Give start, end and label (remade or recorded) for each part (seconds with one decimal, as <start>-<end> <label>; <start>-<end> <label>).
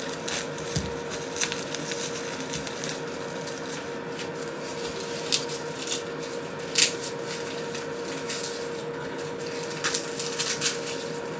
0.0-8.8 recorded; 8.8-9.4 remade; 9.4-11.4 recorded